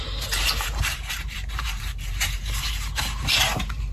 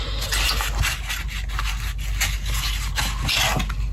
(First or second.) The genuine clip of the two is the second